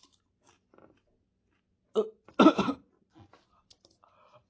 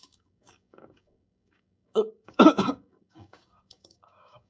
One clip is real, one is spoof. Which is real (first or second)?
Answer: first